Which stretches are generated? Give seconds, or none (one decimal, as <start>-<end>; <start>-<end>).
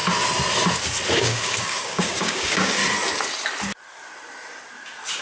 1.1-2.8